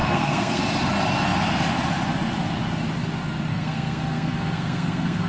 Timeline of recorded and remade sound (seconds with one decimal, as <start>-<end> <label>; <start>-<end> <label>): 0.0-0.6 remade; 0.6-3.5 recorded; 3.5-5.3 remade